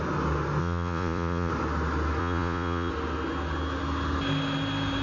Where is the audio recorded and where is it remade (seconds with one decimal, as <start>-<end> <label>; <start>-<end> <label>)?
0.0-0.6 recorded; 0.6-1.5 remade; 1.5-2.2 recorded; 2.2-2.9 remade; 2.9-5.0 recorded